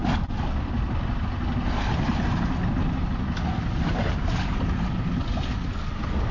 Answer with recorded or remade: recorded